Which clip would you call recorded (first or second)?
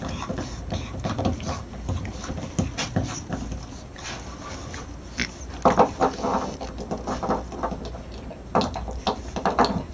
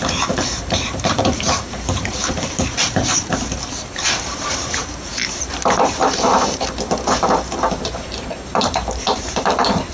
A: first